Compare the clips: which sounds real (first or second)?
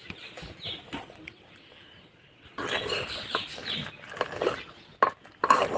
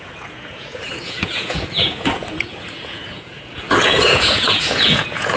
first